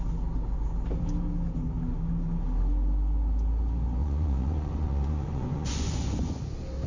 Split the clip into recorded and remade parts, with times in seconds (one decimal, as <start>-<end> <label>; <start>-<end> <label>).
0.0-4.0 recorded; 4.0-6.4 remade; 6.4-6.9 recorded